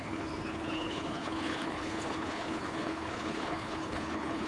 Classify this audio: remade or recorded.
remade